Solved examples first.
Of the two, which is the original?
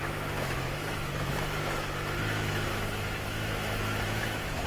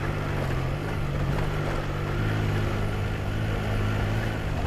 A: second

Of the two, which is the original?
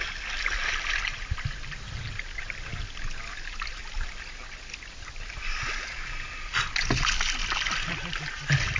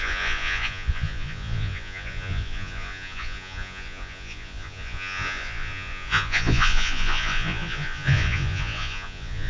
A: first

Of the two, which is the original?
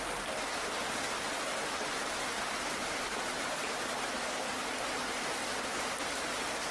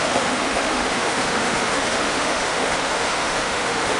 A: first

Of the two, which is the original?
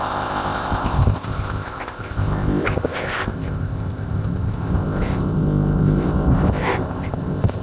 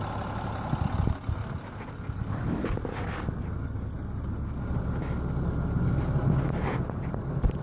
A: second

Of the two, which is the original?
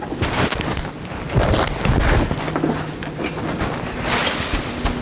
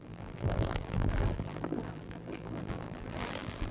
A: first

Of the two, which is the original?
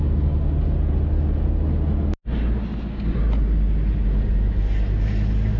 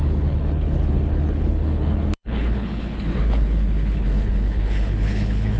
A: first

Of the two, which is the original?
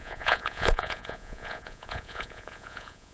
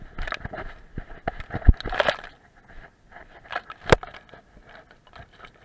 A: second